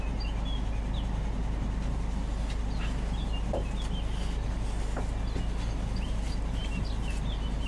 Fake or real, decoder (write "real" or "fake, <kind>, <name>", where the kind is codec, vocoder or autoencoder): real